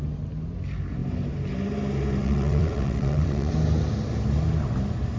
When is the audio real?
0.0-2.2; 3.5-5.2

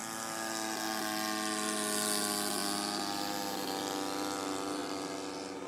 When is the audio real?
0.0-5.7

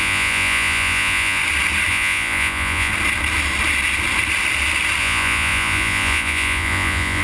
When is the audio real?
1.4-1.9; 2.9-5.0

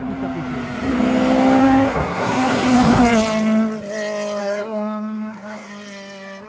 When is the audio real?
0.0-1.6; 3.0-4.4; 5.7-6.5

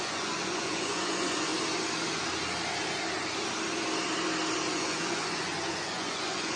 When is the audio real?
1.5-4.7

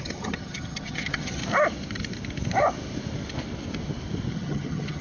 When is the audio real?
1.4-4.3

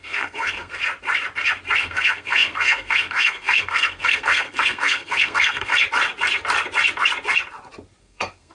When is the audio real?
0.8-1.8; 5.7-8.0